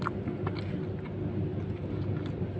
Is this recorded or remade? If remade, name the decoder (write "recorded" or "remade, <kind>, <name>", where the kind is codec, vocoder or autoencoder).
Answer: recorded